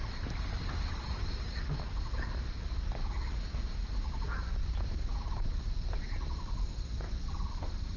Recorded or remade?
recorded